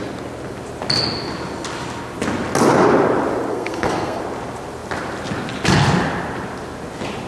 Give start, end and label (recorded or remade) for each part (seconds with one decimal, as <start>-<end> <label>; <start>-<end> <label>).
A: 0.0-3.5 recorded; 3.5-4.2 remade; 4.2-7.3 recorded